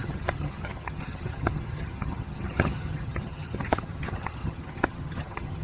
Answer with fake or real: fake